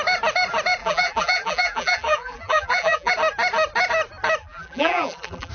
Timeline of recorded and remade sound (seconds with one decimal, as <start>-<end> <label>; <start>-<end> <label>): 0.0-0.8 recorded; 0.8-3.1 remade; 3.1-4.4 recorded; 4.4-5.5 remade